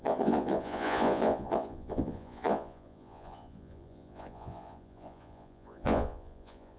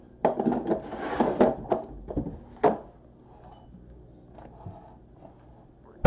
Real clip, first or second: second